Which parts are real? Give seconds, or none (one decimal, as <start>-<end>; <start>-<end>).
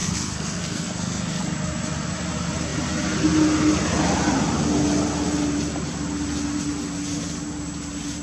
1.4-8.2